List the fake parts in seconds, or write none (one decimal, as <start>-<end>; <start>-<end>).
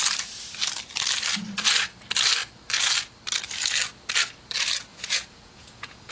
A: 4.9-6.1